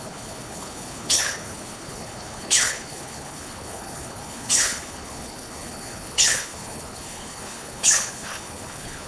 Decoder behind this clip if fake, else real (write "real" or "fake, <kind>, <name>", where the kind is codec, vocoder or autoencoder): fake, codec, HILCodec